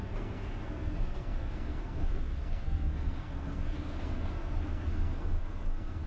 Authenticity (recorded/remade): remade